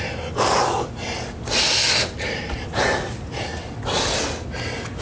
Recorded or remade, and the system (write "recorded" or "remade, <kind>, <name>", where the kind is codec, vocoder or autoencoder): recorded